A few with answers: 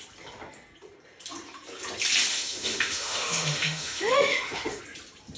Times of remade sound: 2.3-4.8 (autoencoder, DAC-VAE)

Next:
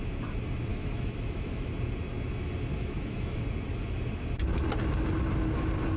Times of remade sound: 0.7-1.7 (autoencoder, DAC-VAE); 2.7-3.4

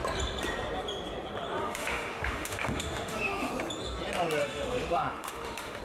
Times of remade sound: 1.6-3.5 (autoencoder, DAC-VAE); 4.4-5.8

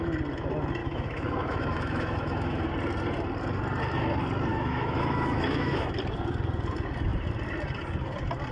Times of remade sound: 0.8-2.6 (autoencoder, DAC-VAE); 4.5-5.9

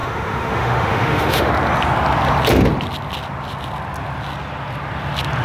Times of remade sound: 0.0-1.5 (autoencoder, DAC-VAE)

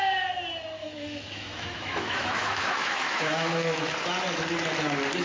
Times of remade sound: 0.8-3.9 (autoencoder, DAC-VAE)